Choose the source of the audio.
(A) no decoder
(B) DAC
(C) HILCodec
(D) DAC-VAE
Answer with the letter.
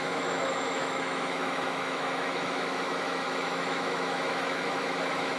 D